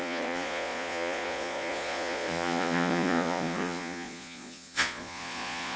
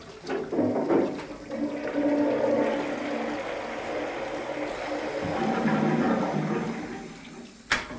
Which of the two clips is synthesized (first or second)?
first